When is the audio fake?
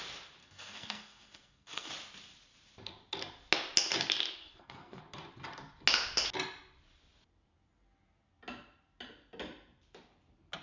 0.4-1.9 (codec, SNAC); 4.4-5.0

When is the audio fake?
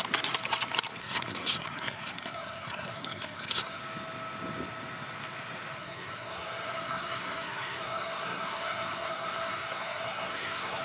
1.0-3.8 (codec, SNAC); 5.8-10.8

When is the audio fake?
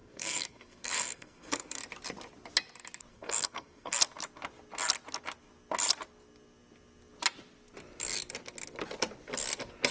0.0-1.8 (codec, SNAC); 3.1-4.0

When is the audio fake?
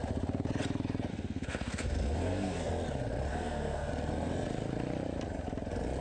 1.1-2.7 (codec, SNAC); 3.3-3.9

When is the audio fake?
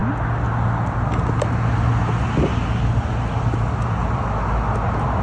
none